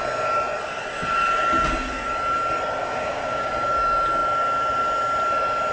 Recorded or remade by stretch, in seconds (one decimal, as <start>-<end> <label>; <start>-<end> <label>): 0.0-2.8 recorded; 2.8-3.5 remade; 3.5-5.7 recorded